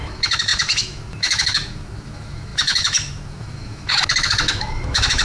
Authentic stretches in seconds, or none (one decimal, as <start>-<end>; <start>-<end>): none